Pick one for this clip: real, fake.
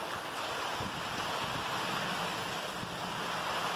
real